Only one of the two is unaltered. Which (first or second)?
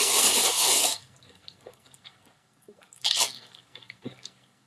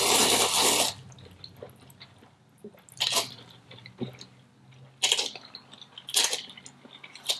second